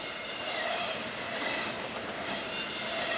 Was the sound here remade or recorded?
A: recorded